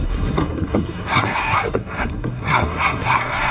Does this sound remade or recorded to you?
remade